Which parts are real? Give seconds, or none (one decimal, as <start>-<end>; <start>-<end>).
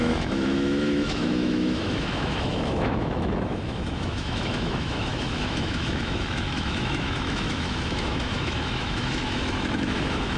none